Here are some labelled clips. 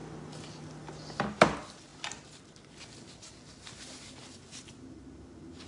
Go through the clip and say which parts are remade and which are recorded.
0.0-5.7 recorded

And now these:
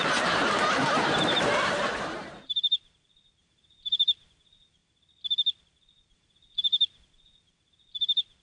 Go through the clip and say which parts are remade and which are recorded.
0.0-4.8 remade; 4.8-5.6 recorded; 5.6-8.4 remade

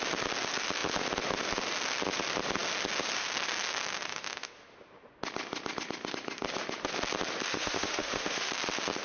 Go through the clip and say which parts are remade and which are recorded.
0.0-7.5 recorded; 7.5-8.5 remade; 8.5-9.0 recorded

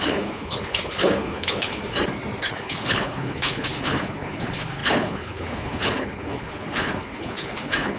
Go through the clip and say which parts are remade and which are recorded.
0.0-1.8 remade; 1.8-2.4 recorded; 2.4-8.0 remade

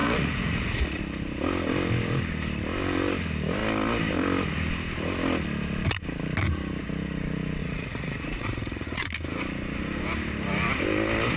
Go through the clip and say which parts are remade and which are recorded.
0.0-1.0 remade; 1.0-7.6 recorded; 7.6-9.1 remade; 9.1-11.4 recorded

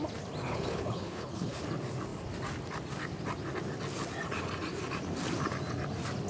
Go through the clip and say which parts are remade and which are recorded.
0.0-0.4 recorded; 0.4-1.6 remade; 1.6-6.3 recorded

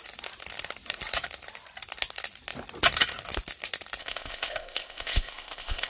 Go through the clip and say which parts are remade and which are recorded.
0.0-4.0 recorded; 4.0-5.9 remade

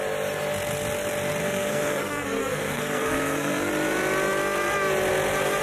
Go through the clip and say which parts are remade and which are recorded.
0.0-1.4 recorded; 1.4-3.7 remade; 3.7-5.6 recorded